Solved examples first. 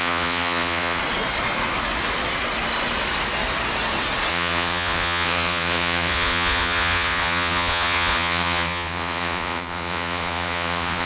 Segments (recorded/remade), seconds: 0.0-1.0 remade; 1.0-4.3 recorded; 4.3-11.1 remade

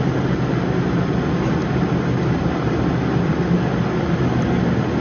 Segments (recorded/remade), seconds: 0.0-5.0 recorded

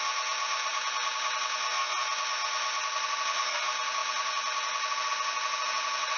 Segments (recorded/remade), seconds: 0.0-6.2 recorded

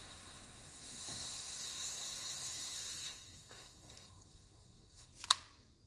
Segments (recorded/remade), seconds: 0.0-5.1 remade; 5.1-5.9 recorded

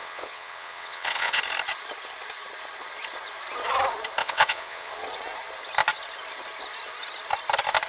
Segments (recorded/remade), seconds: 0.0-1.4 remade; 1.4-4.2 recorded; 4.2-4.9 remade; 4.9-7.9 recorded

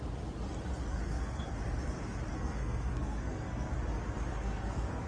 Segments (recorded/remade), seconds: 0.0-0.9 recorded; 0.9-1.4 remade; 1.4-2.3 recorded; 2.3-3.7 remade; 3.7-4.3 recorded; 4.3-5.1 remade

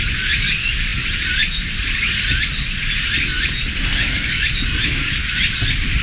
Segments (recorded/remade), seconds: 0.0-0.9 recorded; 0.9-1.6 remade; 1.6-6.0 recorded

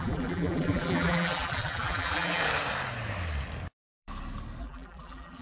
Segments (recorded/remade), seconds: 0.0-2.4 remade; 2.4-4.6 recorded; 4.6-5.4 remade